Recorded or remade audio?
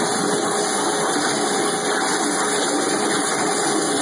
recorded